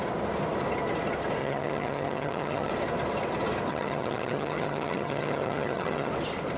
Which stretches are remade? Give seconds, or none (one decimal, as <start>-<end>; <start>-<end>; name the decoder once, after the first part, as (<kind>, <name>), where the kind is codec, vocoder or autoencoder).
1.4-2.7 (vocoder, HiFi-GAN); 3.7-6.1